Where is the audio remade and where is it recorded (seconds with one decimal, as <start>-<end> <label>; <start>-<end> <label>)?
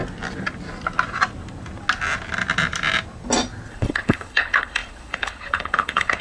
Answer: 0.0-3.7 recorded; 3.7-6.2 remade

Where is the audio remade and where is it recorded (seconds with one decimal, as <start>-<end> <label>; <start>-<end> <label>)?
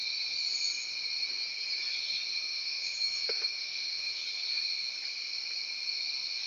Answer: 0.0-2.3 recorded; 2.3-4.2 remade; 4.2-6.5 recorded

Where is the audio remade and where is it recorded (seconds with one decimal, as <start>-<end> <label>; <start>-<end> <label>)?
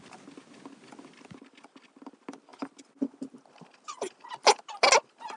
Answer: 0.0-5.4 recorded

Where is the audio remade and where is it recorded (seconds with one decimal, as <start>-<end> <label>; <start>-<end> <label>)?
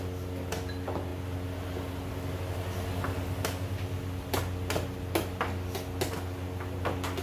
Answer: 0.0-7.2 recorded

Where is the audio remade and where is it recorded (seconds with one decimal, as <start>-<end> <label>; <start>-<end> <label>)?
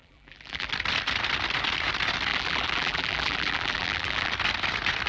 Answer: 0.0-0.7 remade; 0.7-2.3 recorded; 2.3-4.3 remade; 4.3-5.1 recorded